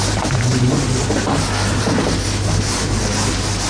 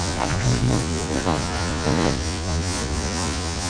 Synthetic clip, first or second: second